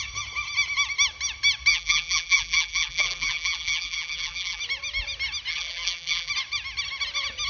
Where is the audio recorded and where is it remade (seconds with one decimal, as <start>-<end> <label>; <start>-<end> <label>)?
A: 0.0-1.7 recorded; 1.7-4.6 remade; 4.6-5.5 recorded; 5.5-6.3 remade; 6.3-7.5 recorded

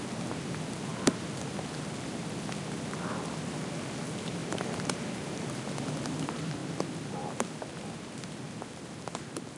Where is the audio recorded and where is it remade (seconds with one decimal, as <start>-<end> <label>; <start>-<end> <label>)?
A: 0.0-4.4 recorded; 4.4-5.6 remade; 5.6-9.6 recorded

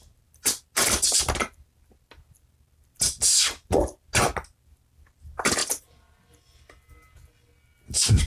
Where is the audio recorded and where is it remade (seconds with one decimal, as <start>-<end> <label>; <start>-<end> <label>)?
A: 0.0-5.6 recorded; 5.6-6.2 remade; 6.2-8.3 recorded

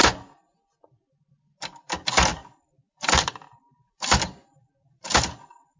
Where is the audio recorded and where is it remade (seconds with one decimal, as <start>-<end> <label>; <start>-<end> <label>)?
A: 0.0-2.3 recorded; 2.3-5.8 remade

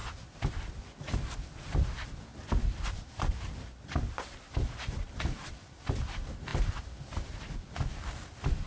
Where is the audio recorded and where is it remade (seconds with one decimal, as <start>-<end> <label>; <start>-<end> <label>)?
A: 0.0-8.7 recorded

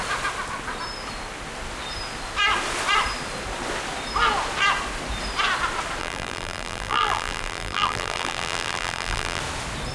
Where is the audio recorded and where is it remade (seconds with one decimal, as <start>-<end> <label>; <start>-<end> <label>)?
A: 0.0-6.0 recorded; 6.0-9.4 remade; 9.4-9.9 recorded